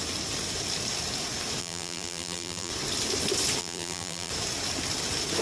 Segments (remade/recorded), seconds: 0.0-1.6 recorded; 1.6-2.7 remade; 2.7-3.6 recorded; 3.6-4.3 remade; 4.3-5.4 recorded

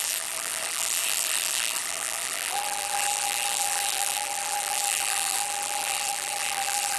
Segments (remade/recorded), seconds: 0.0-7.0 remade

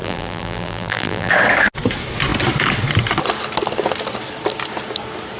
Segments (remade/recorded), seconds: 0.0-1.3 remade; 1.3-5.4 recorded

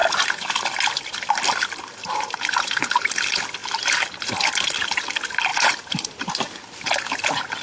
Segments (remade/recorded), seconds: 0.0-2.0 recorded; 2.0-3.1 remade; 3.1-5.5 recorded; 5.5-6.3 remade; 6.3-7.6 recorded

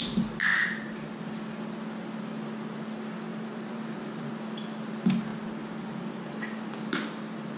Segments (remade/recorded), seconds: 0.0-3.3 recorded; 3.3-4.3 remade; 4.3-7.6 recorded